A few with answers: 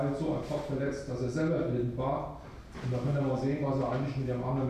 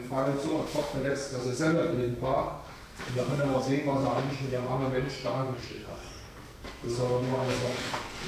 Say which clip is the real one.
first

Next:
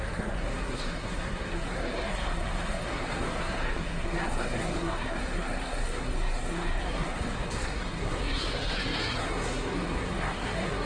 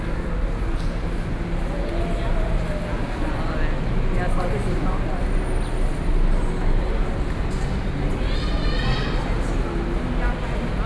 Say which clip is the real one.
second